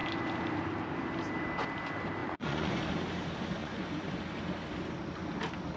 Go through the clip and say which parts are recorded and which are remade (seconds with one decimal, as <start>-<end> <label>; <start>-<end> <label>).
0.0-2.2 recorded; 2.2-2.8 remade; 2.8-3.6 recorded; 3.6-4.1 remade; 4.1-5.8 recorded